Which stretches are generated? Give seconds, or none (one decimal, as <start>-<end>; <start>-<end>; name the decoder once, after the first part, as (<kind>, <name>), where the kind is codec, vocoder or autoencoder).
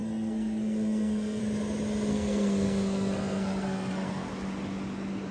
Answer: 0.0-1.4 (codec, SNAC); 2.1-4.3